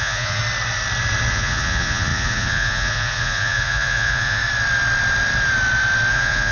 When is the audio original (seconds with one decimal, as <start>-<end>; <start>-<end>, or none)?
0.4-1.3; 4.4-6.1